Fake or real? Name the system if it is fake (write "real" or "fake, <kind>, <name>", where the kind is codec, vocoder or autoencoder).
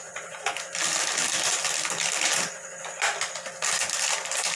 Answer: real